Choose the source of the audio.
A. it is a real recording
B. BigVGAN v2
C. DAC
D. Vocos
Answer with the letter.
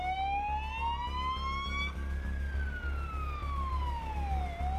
A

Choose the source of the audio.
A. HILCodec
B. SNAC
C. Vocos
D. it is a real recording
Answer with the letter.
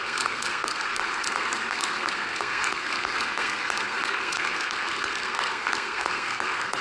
B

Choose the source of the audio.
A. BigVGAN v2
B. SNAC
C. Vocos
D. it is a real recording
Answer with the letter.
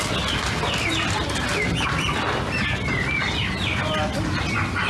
D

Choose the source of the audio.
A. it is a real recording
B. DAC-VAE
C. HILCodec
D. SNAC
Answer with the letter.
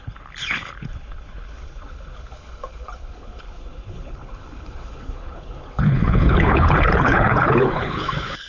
C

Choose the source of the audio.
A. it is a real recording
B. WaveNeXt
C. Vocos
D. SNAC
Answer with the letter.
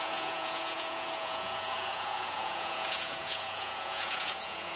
C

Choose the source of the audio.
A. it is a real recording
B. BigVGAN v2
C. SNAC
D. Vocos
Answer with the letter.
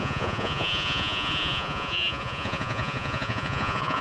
D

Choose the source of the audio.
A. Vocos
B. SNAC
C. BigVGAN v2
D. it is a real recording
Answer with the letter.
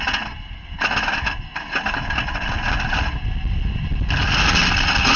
D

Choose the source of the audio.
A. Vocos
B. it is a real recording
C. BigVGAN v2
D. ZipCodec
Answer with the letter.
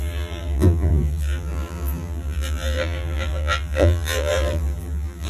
C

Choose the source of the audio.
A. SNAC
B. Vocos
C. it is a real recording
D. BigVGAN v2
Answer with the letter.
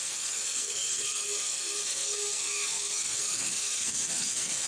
A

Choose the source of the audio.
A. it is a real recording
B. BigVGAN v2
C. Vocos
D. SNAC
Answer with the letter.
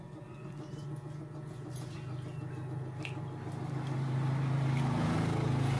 A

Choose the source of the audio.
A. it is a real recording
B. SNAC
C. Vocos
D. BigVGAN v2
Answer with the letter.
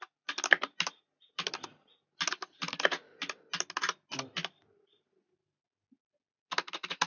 A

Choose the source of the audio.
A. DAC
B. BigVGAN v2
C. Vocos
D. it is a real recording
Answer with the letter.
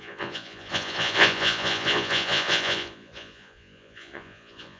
C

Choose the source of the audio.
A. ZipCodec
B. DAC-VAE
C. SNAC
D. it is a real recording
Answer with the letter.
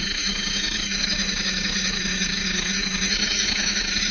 B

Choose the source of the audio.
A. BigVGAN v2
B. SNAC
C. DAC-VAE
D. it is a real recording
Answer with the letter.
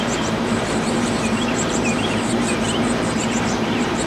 A